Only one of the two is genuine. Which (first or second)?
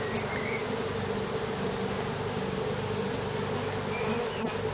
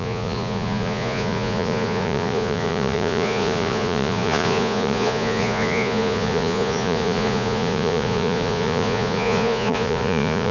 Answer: first